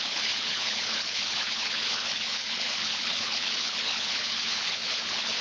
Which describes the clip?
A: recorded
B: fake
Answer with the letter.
B